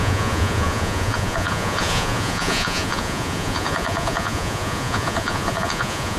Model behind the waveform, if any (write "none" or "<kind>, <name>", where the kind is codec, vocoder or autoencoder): vocoder, Vocos